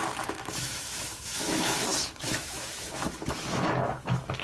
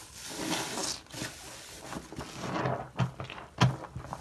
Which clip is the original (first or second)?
second